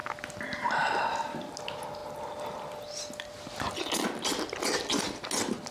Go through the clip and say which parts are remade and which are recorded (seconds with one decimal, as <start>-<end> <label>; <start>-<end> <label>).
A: 0.0-5.7 recorded